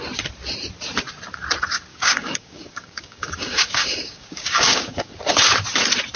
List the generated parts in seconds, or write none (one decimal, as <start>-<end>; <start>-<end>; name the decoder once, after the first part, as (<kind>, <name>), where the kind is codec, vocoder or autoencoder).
1.9-5.1 (codec, DAC)